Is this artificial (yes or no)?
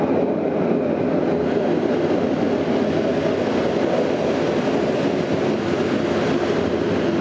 no